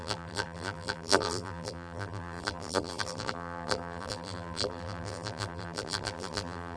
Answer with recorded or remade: remade